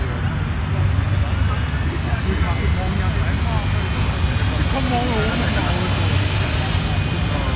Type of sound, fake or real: real